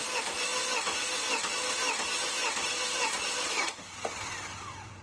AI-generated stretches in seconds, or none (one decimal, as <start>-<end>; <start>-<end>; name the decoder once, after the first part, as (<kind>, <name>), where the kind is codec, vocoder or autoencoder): 2.7-3.5 (vocoder, Vocos)